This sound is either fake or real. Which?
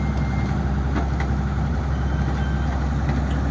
real